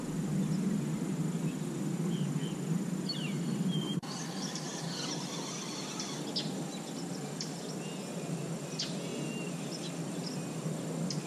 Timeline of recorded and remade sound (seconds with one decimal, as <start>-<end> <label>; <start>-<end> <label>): 0.0-11.3 recorded